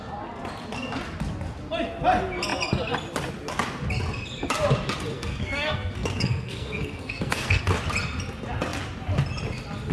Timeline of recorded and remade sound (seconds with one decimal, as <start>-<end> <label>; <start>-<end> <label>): 0.0-5.1 recorded; 5.1-7.6 remade; 7.6-9.9 recorded